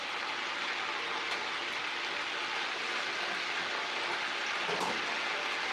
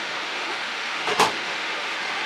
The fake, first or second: second